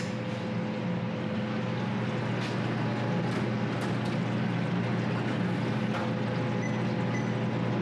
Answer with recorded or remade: recorded